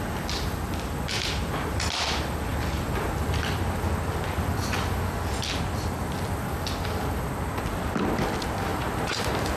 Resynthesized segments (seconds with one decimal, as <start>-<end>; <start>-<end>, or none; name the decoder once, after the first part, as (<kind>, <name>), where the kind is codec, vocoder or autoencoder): 8.7-9.6 (vocoder, BigVGAN v2)